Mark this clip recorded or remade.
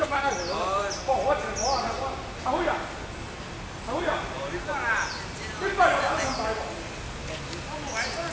recorded